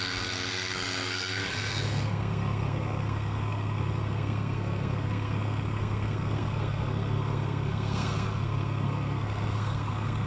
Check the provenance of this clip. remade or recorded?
remade